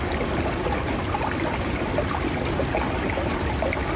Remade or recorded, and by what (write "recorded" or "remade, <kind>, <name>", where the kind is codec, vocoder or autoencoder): recorded